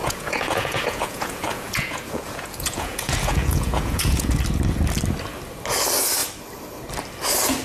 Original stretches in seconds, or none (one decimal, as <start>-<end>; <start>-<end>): 4.4-7.6